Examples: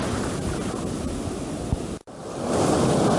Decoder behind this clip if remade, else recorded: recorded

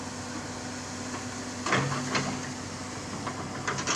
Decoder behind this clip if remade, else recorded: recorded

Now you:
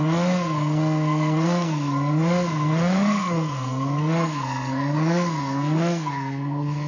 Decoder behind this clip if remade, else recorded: remade, codec, SNAC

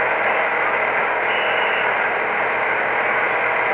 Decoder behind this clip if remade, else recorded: recorded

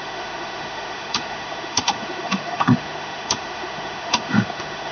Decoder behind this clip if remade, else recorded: remade, autoencoder, DAC-VAE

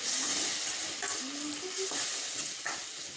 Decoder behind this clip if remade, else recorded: recorded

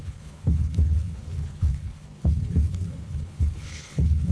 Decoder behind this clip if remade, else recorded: remade, codec, HILCodec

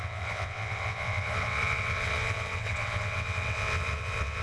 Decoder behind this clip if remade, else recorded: remade, vocoder, WaveNeXt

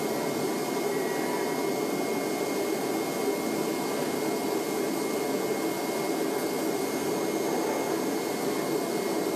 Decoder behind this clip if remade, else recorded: recorded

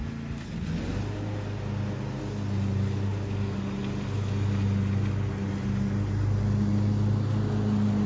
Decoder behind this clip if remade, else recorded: recorded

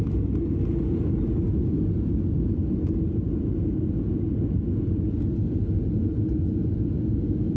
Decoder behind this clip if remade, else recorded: recorded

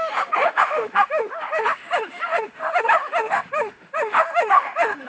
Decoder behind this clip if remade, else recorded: remade, autoencoder, DAC-VAE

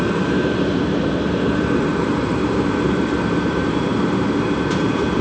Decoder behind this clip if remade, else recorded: remade, vocoder, BigVGAN v2